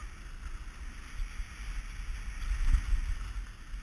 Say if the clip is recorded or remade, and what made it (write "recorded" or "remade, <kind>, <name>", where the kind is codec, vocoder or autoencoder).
recorded